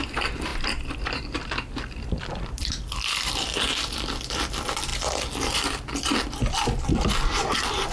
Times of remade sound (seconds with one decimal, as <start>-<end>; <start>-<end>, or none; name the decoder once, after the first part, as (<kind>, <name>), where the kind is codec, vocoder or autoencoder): 0.0-7.9 (vocoder, BigVGAN v2)